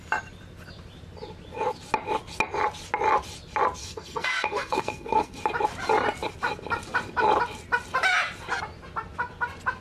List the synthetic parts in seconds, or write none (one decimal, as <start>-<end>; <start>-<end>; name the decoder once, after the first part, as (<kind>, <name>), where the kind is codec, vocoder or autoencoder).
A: 3.8-5.4 (codec, SNAC)